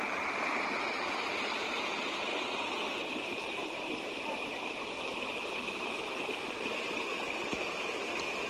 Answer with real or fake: fake